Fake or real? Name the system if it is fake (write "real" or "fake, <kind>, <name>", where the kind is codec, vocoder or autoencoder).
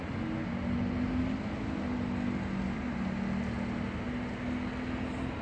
real